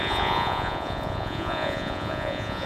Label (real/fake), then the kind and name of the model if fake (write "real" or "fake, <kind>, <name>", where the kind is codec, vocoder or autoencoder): fake, vocoder, Vocos